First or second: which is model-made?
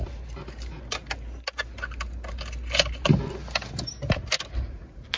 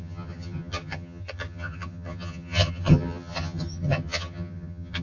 second